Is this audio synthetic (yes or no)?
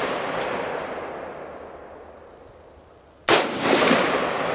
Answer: no